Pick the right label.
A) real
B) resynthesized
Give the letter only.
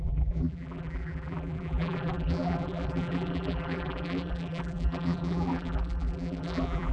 B